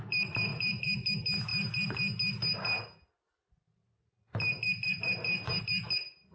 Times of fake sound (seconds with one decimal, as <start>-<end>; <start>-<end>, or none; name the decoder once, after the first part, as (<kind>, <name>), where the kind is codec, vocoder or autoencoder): 0.5-1.1 (vocoder, BigVGAN v2); 3.8-5.6